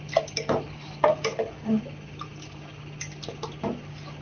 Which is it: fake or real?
real